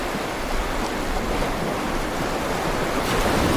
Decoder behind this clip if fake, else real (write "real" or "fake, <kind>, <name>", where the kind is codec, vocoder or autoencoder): real